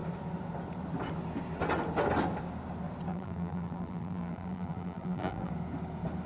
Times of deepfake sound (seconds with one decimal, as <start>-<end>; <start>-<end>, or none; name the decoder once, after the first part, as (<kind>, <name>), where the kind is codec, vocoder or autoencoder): 3.1-5.5 (vocoder, BigVGAN v2)